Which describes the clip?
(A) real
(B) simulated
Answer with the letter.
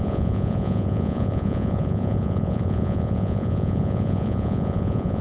B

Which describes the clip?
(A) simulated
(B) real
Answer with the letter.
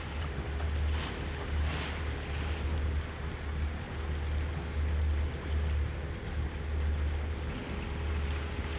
B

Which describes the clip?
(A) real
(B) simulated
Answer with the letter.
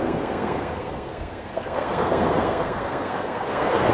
B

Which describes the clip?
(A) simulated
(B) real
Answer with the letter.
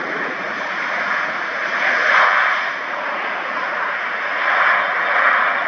A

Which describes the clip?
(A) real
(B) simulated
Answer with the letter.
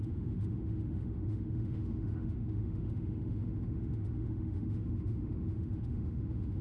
B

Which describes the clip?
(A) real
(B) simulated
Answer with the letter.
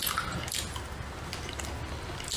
A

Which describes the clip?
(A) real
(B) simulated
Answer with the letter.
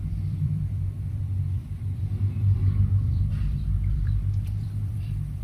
B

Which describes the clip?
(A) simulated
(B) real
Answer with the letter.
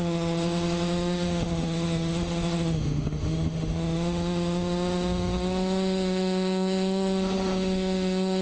A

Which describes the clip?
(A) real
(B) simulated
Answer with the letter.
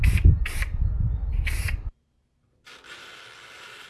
B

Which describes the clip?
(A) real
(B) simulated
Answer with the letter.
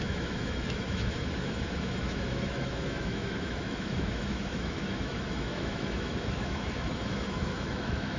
B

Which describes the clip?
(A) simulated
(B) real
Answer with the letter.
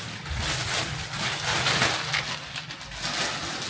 B